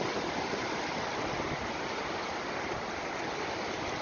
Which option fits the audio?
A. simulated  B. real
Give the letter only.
B